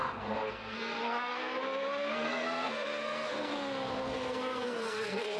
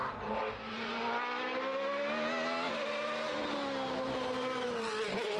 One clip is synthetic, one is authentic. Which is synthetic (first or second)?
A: first